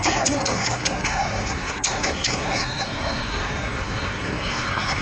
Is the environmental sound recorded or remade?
remade